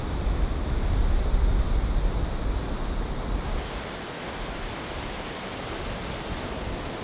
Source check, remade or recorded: recorded